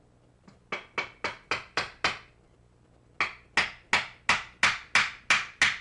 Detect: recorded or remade recorded